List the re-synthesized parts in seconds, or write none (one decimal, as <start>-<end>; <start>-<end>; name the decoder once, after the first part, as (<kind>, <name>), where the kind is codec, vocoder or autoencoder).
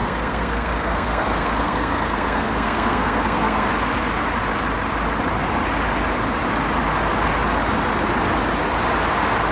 0.0-3.7 (codec, SNAC)